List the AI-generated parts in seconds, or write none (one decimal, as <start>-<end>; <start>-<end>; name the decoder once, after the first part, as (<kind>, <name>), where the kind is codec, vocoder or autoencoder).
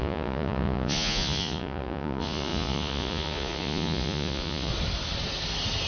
0.0-4.7 (vocoder, Vocos)